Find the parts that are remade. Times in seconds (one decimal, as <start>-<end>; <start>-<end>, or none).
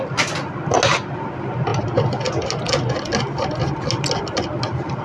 none